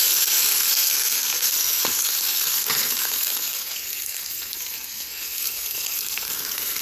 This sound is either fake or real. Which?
fake